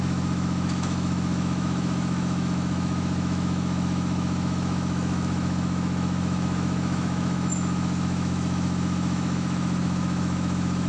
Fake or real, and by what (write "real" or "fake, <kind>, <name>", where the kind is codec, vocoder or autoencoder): fake, autoencoder, DAC-VAE